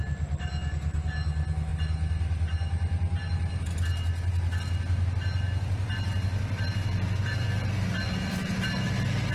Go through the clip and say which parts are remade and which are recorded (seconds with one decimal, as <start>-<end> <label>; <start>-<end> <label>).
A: 0.0-9.3 recorded